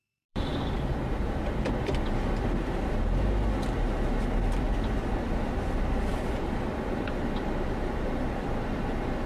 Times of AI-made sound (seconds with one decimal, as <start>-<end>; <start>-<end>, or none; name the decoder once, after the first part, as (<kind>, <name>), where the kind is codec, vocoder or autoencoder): 0.0-0.5 (vocoder, BigVGAN v2); 5.2-9.3